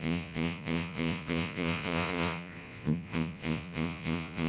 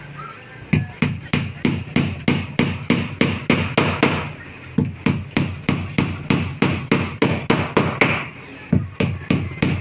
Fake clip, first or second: first